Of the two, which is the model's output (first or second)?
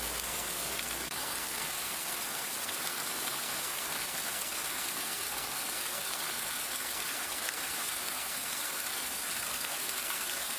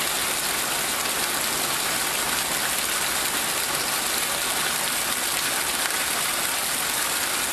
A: first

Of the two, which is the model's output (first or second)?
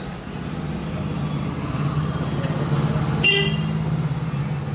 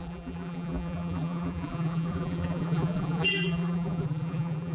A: second